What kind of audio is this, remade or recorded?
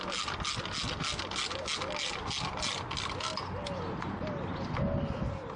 recorded